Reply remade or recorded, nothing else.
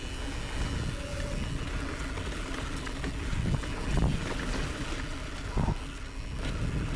recorded